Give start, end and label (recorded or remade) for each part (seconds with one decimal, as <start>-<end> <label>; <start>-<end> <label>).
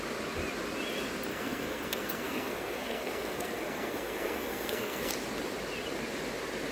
0.0-1.3 recorded; 1.3-5.1 remade; 5.1-6.7 recorded